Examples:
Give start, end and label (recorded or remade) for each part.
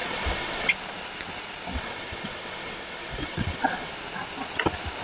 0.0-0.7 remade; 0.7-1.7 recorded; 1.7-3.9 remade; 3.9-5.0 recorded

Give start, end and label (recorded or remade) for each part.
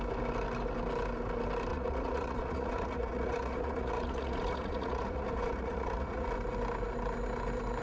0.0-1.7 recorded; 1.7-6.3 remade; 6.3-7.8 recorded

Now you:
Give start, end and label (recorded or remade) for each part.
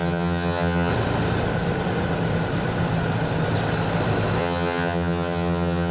0.0-0.9 remade; 0.9-4.4 recorded; 4.4-5.9 remade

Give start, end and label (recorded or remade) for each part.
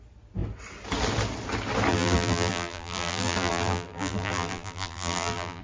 0.0-1.9 recorded; 1.9-5.6 remade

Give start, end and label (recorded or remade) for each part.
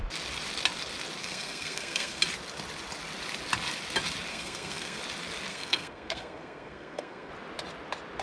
0.0-1.2 recorded; 1.2-2.2 remade; 2.2-4.3 recorded; 4.3-5.0 remade; 5.0-5.5 recorded; 5.5-7.3 remade; 7.3-8.2 recorded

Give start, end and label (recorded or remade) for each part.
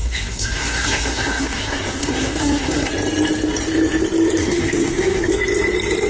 0.0-2.9 remade; 2.9-4.4 recorded; 4.4-5.3 remade; 5.3-6.1 recorded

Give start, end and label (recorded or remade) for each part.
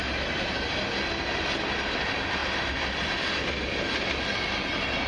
0.0-5.1 recorded